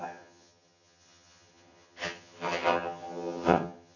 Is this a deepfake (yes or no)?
yes